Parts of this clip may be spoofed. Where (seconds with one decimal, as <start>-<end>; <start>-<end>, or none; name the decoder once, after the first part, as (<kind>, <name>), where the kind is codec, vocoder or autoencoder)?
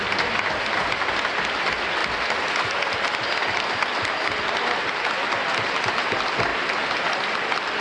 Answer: none